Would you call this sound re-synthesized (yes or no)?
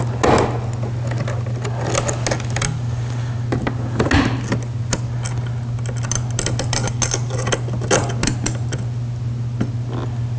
no